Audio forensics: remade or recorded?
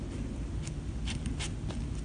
recorded